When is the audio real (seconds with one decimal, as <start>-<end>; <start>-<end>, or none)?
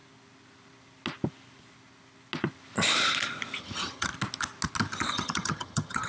0.0-3.6; 4.1-5.1